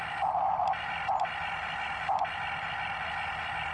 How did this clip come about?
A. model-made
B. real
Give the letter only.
B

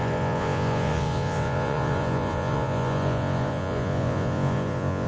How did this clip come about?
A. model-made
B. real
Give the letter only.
A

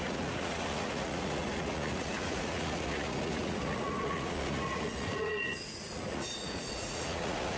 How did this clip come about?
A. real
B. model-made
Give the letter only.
B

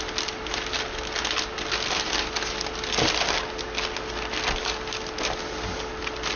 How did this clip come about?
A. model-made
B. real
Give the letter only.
B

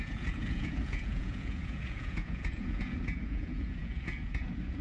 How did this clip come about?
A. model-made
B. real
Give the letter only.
A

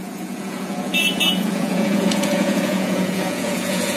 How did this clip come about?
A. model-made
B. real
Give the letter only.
A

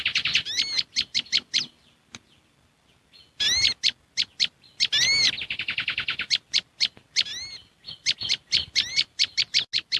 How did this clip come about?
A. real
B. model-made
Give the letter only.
A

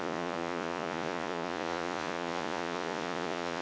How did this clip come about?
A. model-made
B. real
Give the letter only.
A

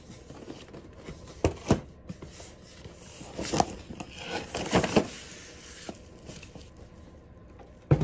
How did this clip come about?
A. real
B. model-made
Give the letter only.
A